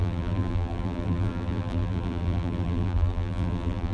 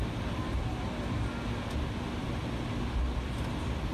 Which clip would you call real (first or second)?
second